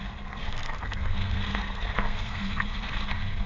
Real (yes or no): no